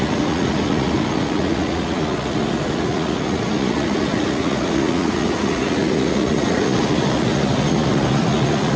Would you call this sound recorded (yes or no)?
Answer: no